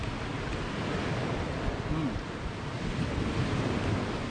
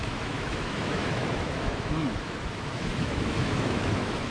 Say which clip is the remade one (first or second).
second